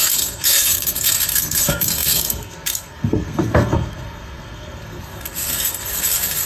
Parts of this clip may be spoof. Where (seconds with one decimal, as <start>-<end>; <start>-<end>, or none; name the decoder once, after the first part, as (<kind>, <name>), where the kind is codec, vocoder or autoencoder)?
0.0-6.5 (codec, SNAC)